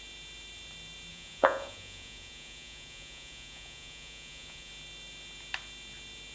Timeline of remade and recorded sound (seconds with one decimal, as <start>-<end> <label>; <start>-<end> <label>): 0.0-1.1 recorded; 1.1-4.7 remade; 4.7-6.3 recorded